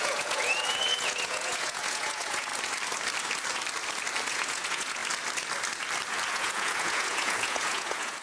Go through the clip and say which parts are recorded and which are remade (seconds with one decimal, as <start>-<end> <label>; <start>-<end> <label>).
0.0-2.5 remade; 2.5-4.3 recorded; 4.3-5.0 remade; 5.0-6.3 recorded; 6.3-8.2 remade